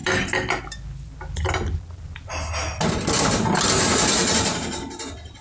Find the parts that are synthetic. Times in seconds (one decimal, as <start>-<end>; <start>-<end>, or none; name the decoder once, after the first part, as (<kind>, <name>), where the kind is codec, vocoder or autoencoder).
4.2-4.9 (vocoder, BigVGAN v2)